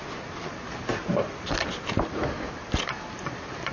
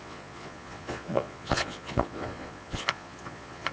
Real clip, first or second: first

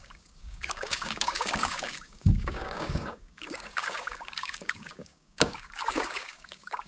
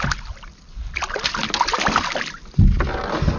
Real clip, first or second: second